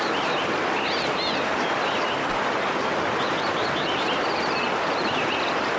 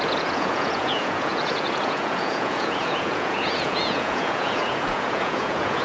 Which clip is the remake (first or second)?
second